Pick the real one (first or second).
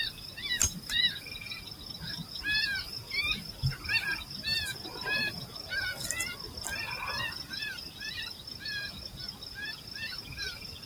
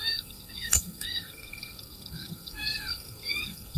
first